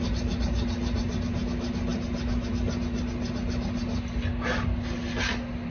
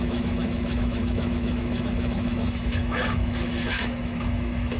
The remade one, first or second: second